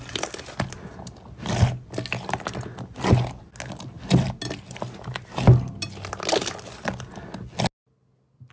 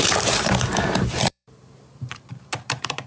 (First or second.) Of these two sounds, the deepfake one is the second